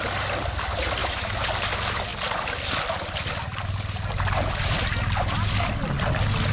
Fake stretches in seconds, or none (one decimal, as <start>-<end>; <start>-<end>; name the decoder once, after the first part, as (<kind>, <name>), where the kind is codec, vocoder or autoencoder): 1.0-1.5 (autoencoder, DAC-VAE)